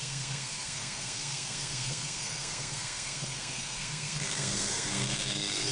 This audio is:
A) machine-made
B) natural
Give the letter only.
A